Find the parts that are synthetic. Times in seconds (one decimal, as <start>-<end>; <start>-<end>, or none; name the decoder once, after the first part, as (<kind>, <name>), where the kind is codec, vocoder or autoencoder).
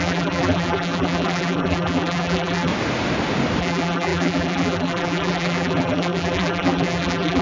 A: 0.0-2.7 (vocoder, BigVGAN v2); 3.6-7.4